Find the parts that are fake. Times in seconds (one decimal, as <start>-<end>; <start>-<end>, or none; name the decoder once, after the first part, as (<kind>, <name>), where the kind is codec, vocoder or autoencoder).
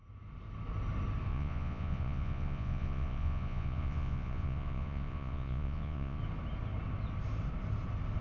1.3-6.2 (vocoder, Vocos)